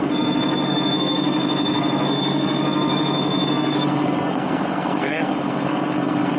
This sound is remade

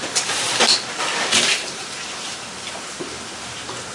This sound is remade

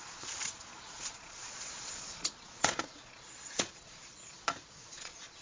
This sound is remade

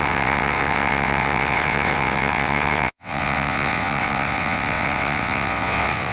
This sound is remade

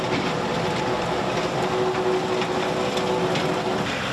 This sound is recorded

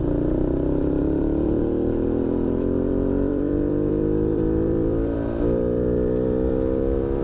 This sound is remade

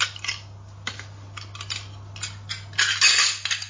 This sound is recorded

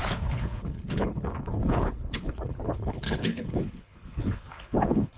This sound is remade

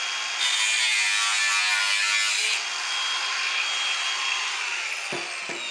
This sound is recorded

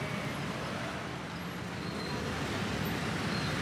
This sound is recorded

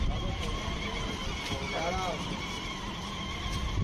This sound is recorded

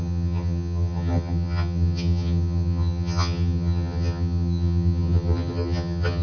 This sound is remade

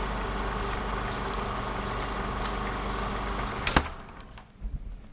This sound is recorded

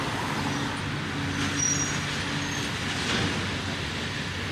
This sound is recorded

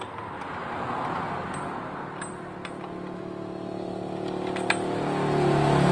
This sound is recorded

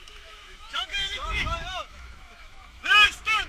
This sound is remade